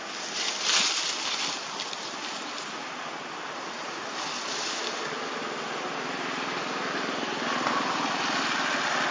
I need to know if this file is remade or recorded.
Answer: recorded